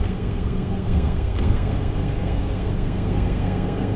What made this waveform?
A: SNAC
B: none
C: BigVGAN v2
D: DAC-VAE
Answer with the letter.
A